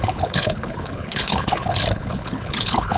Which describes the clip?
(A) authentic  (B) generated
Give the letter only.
B